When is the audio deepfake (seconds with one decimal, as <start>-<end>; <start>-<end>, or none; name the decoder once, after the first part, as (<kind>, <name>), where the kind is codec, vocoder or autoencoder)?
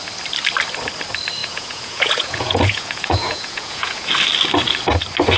1.4-4.1 (vocoder, Vocos)